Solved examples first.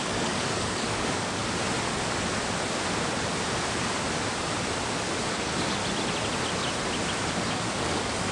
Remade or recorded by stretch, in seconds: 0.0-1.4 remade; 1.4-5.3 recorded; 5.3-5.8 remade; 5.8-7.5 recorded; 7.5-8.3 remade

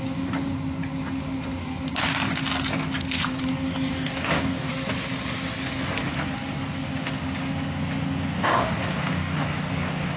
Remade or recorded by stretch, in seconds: 0.0-3.9 recorded; 3.9-4.7 remade; 4.7-8.4 recorded; 8.4-10.2 remade

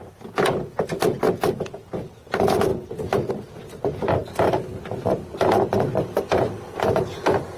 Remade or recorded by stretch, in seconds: 0.0-7.6 recorded

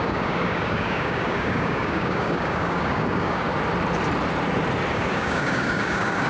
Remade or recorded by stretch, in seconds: 0.0-3.5 remade; 3.5-4.9 recorded; 4.9-6.3 remade

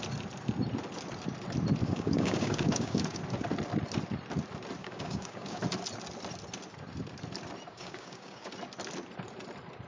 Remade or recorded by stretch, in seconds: 0.0-1.8 recorded; 1.8-3.2 remade; 3.2-4.8 recorded; 4.8-5.6 remade; 5.6-7.7 recorded; 7.7-8.5 remade; 8.5-9.9 recorded

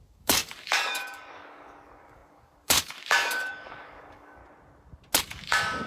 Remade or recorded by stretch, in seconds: 0.0-4.4 remade; 4.4-5.2 recorded; 5.2-5.9 remade

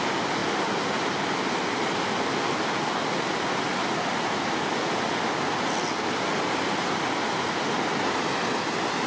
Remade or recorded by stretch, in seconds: 0.0-9.1 recorded